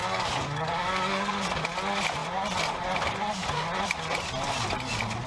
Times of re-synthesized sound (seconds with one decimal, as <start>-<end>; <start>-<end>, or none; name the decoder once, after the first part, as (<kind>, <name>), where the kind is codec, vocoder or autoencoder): 0.0-1.3 (codec, DAC)